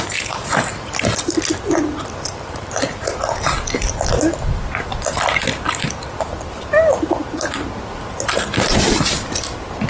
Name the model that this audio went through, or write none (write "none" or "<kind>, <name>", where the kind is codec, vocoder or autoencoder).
none